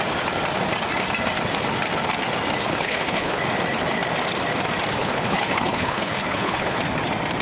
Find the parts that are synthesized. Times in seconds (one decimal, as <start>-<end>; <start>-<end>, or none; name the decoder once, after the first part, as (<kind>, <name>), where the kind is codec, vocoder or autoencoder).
2.7-3.4 (codec, HILCodec); 5.0-6.8